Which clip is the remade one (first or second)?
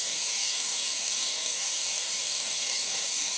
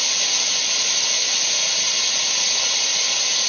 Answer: first